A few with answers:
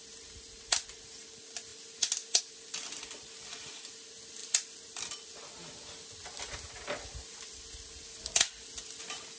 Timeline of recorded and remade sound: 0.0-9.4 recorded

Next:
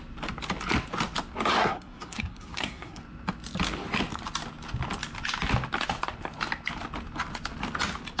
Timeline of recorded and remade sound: 0.0-1.6 recorded; 1.6-3.0 remade; 3.0-8.2 recorded

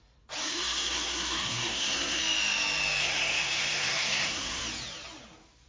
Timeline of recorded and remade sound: 0.0-0.4 recorded; 0.4-2.2 remade; 2.2-3.0 recorded; 3.0-4.6 remade; 4.6-5.7 recorded

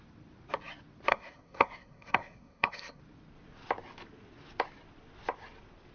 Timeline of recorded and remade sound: 0.0-1.1 recorded; 1.1-3.0 remade; 3.0-5.9 recorded

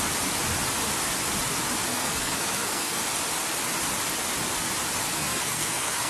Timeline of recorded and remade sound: 0.0-1.9 recorded; 1.9-3.0 remade; 3.0-5.1 recorded; 5.1-6.1 remade

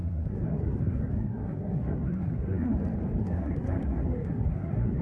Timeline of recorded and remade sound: 0.0-2.8 remade; 2.8-3.2 recorded; 3.2-5.0 remade

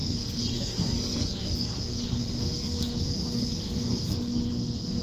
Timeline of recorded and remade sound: 0.0-5.0 remade

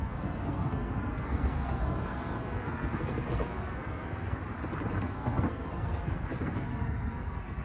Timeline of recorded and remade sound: 0.0-4.4 remade; 4.4-5.0 recorded; 5.0-7.6 remade